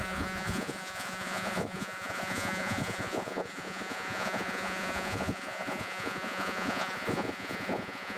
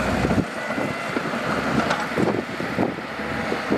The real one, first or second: second